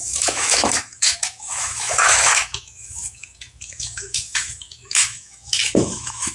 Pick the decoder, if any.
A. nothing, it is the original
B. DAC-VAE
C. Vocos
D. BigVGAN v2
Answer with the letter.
B